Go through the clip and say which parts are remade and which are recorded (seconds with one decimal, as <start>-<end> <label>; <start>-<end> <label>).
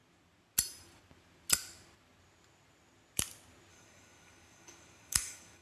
0.0-3.7 recorded; 3.7-5.6 remade